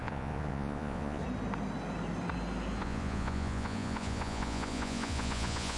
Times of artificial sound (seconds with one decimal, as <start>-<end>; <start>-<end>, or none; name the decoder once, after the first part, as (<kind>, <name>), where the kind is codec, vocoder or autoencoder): 0.0-1.2 (vocoder, Vocos); 2.8-5.8